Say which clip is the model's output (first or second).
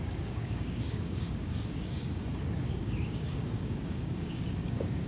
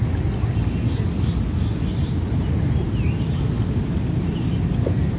first